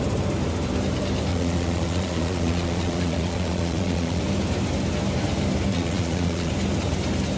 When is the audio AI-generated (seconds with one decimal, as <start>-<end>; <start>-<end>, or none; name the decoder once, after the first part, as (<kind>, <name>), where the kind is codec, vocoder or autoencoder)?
1.3-4.2 (vocoder, Vocos); 5.7-6.5